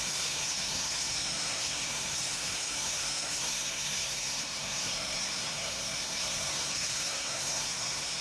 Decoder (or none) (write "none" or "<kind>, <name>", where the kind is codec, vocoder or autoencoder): codec, SNAC